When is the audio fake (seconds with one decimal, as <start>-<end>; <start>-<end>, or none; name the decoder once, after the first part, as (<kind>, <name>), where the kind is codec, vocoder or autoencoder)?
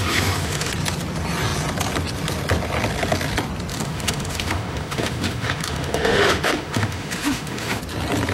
0.0-0.7 (autoencoder, DAC-VAE); 3.7-7.8